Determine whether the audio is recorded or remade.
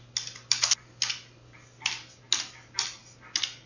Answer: recorded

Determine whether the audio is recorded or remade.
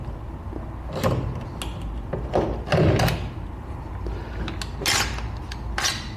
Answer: recorded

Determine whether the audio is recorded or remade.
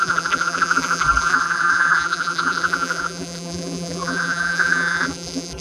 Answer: remade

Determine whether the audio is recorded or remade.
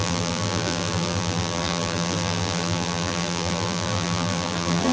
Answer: remade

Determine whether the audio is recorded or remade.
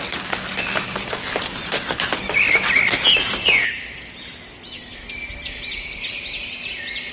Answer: recorded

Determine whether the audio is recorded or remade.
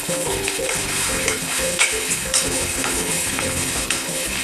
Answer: remade